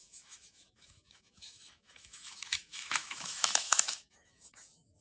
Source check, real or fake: fake